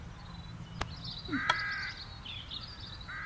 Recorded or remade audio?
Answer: recorded